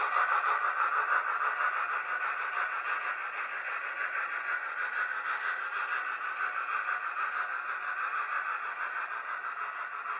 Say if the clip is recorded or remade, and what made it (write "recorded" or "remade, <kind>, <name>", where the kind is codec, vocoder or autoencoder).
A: recorded